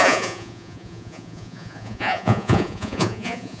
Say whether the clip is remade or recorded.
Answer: remade